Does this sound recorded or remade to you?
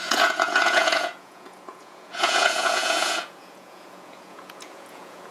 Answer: remade